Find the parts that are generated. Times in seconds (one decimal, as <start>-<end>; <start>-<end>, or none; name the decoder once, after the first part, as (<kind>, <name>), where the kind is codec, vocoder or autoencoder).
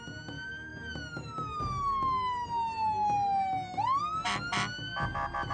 none